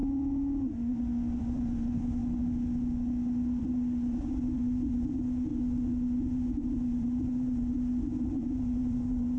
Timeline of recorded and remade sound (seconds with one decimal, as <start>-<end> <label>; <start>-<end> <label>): 0.0-1.4 recorded; 1.4-2.2 remade; 2.2-3.6 recorded; 3.6-5.5 remade; 5.5-6.2 recorded; 6.2-9.4 remade